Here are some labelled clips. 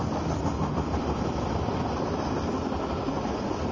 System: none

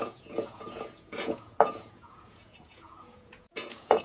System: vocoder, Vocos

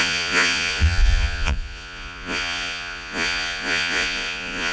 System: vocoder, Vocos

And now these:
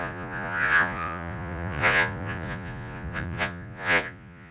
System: vocoder, Vocos